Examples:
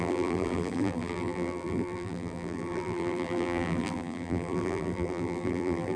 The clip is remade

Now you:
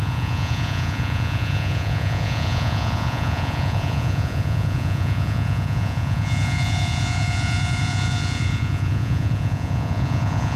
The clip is remade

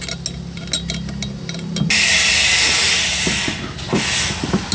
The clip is recorded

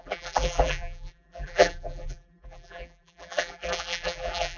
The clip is remade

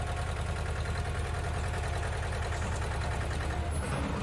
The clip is recorded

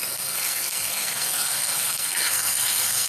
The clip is remade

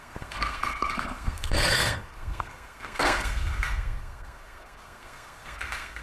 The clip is remade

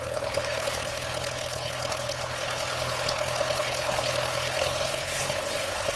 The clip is remade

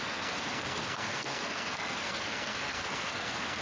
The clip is remade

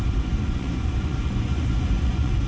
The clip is remade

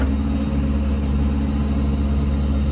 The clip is recorded